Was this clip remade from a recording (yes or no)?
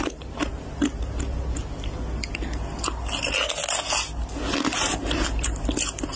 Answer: no